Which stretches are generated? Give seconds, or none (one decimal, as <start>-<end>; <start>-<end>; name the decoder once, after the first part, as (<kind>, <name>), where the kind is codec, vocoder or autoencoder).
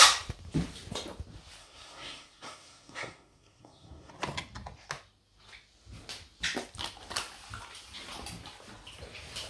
1.6-4.1 (codec, SNAC)